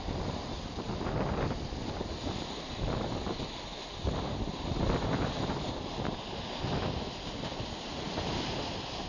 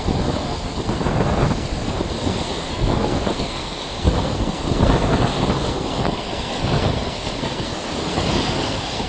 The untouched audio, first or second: first